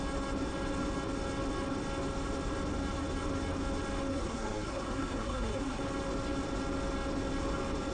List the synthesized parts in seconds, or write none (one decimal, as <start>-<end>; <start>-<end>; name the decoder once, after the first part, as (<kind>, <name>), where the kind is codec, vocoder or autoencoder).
4.1-5.8 (codec, SNAC)